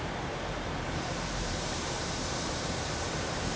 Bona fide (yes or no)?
no